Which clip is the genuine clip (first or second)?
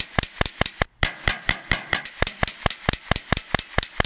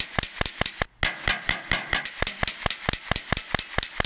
second